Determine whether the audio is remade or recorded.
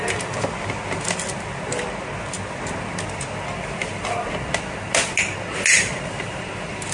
recorded